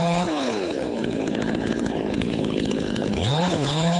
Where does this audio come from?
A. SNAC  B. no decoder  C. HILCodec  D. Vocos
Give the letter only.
C